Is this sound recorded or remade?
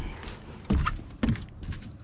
recorded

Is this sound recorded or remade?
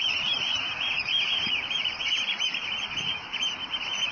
remade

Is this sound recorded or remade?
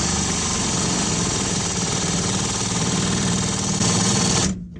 remade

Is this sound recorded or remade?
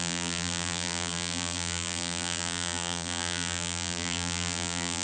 remade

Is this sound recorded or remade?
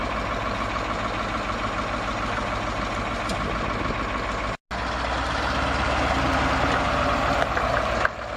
recorded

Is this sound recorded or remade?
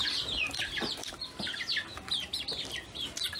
remade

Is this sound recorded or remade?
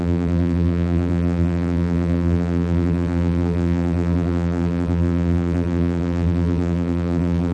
remade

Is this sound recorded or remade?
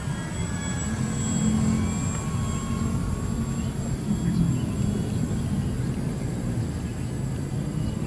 recorded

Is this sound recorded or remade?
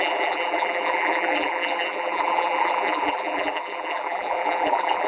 remade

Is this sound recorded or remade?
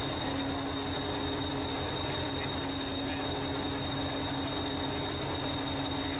recorded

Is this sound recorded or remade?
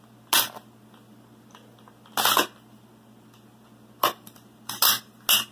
recorded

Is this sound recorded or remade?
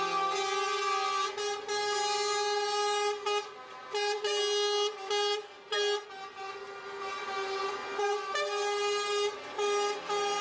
recorded